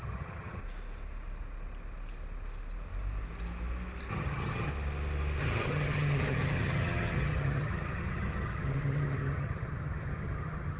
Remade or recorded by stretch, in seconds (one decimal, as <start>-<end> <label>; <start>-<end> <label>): 0.0-0.6 remade; 0.6-4.1 recorded; 4.1-4.7 remade; 4.7-5.4 recorded; 5.4-10.8 remade